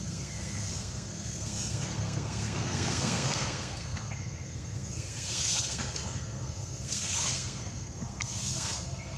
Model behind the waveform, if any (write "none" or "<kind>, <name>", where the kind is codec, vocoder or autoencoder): codec, SNAC